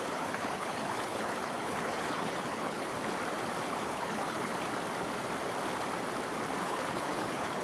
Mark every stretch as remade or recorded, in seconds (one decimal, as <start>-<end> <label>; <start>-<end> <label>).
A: 0.0-2.9 remade; 2.9-3.8 recorded; 3.8-4.5 remade; 4.5-6.6 recorded; 6.6-7.6 remade